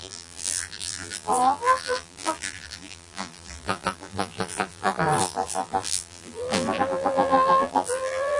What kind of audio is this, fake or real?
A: fake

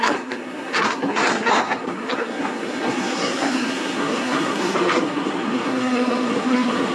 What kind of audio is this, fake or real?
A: fake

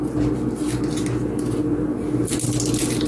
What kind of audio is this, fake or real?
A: real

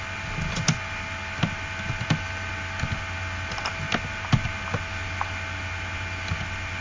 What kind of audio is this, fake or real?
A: real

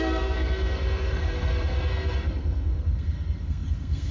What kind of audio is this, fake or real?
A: fake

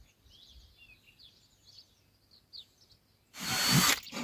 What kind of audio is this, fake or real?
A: real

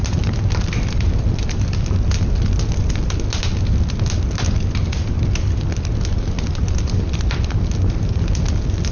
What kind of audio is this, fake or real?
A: real